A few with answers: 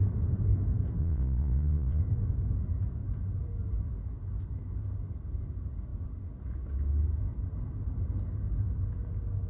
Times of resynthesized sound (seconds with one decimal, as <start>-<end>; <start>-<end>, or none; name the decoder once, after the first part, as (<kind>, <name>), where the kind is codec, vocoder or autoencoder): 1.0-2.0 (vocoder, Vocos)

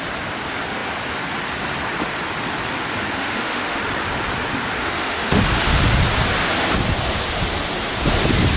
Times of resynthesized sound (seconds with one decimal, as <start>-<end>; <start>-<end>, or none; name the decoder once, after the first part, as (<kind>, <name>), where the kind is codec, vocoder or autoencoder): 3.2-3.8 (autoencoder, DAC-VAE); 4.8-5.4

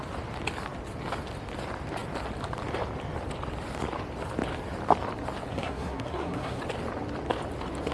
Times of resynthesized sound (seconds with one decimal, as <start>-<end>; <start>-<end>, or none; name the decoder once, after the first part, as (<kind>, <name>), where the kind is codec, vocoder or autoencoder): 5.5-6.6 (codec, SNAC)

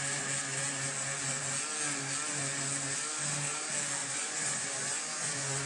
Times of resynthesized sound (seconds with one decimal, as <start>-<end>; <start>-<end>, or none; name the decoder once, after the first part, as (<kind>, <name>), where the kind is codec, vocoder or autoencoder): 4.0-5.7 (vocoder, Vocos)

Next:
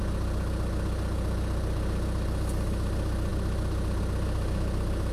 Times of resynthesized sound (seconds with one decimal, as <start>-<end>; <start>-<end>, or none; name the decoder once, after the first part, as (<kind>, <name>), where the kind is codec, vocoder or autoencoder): none

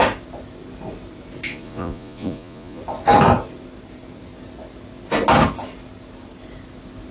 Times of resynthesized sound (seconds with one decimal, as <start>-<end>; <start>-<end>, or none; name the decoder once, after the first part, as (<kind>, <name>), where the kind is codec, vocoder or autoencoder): 1.5-2.8 (vocoder, Vocos)

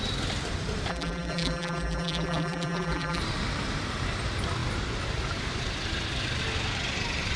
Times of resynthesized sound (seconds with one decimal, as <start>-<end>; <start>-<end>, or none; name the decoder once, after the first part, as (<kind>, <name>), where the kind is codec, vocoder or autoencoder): 0.9-3.2 (vocoder, BigVGAN v2)

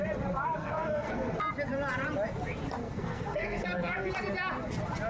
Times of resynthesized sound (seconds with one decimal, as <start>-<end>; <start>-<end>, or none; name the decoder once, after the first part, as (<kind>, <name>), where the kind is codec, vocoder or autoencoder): 0.6-1.3 (codec, SNAC); 2.8-4.1